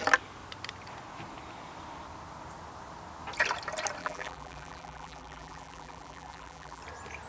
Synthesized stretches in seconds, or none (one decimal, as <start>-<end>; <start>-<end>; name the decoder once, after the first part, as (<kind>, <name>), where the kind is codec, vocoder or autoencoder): 4.0-6.8 (vocoder, BigVGAN v2)